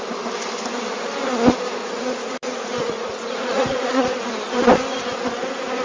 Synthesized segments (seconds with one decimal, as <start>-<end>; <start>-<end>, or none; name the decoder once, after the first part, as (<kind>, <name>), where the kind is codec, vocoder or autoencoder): 1.8-4.3 (vocoder, Vocos)